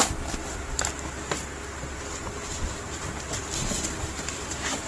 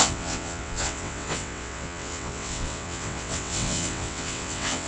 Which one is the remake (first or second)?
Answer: second